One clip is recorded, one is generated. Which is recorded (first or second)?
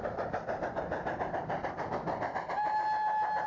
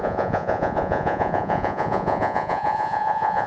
first